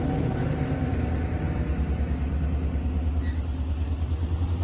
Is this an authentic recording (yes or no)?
yes